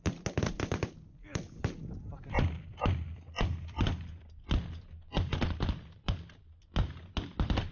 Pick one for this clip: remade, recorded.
recorded